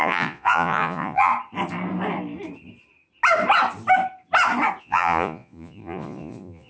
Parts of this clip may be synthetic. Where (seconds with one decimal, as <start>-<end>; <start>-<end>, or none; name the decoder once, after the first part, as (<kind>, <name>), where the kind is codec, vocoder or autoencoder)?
0.0-1.3 (vocoder, Vocos); 4.8-6.7